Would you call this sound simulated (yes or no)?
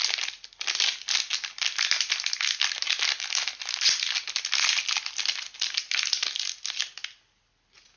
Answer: no